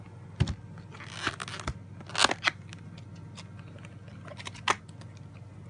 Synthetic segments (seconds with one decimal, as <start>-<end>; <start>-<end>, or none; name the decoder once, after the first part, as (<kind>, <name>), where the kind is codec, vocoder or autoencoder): none